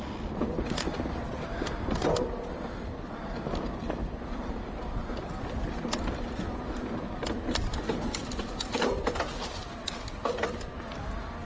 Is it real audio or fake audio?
real